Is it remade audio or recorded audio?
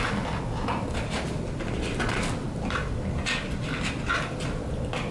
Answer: recorded